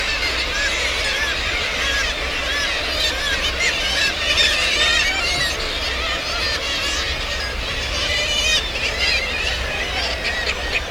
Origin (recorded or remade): remade